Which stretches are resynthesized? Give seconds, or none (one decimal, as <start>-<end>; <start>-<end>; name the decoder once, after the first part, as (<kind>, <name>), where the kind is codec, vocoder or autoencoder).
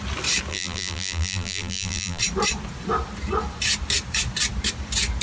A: 0.5-2.2 (vocoder, BigVGAN v2)